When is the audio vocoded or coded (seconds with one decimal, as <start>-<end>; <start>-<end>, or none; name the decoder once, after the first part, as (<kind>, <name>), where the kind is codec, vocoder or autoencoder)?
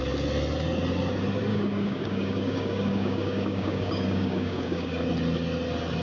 1.5-5.1 (codec, DAC)